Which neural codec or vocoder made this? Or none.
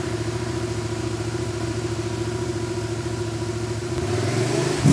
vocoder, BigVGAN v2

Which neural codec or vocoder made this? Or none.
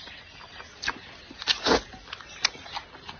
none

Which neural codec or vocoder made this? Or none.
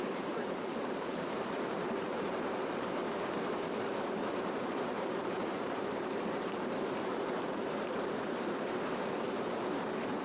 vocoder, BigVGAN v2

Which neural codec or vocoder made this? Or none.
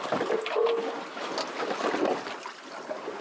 vocoder, BigVGAN v2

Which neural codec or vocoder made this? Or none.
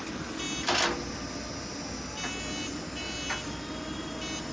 none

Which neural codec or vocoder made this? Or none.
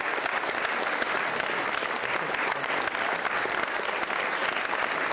none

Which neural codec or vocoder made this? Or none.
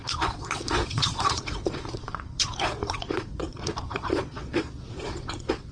vocoder, Vocos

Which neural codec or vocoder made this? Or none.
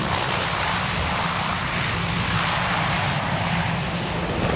none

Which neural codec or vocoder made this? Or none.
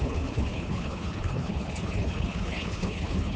codec, HILCodec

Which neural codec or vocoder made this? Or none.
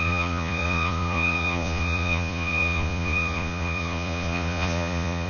vocoder, Vocos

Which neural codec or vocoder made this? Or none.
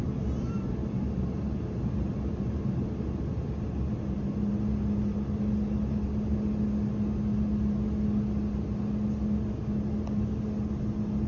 none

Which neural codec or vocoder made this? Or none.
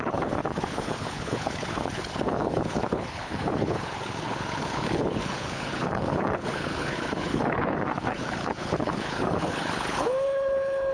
codec, HILCodec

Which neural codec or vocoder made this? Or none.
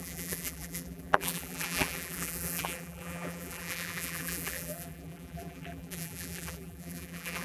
vocoder, BigVGAN v2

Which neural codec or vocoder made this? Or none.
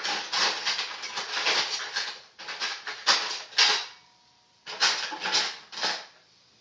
none